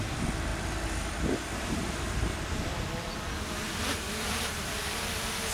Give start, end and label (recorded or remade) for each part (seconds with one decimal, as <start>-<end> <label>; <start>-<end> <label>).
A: 0.0-0.5 remade; 0.5-1.6 recorded; 1.6-2.7 remade; 2.7-4.1 recorded; 4.1-5.5 remade